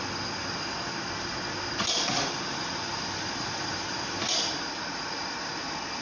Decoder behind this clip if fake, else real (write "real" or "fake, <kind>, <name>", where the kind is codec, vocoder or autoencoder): real